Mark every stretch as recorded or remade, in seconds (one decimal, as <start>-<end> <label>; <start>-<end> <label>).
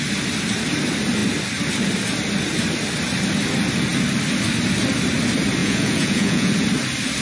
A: 0.0-5.6 recorded; 5.6-6.5 remade; 6.5-7.2 recorded